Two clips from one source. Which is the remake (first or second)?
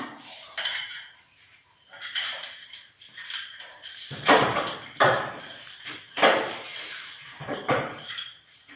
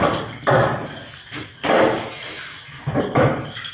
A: first